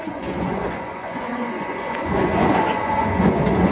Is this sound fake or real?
fake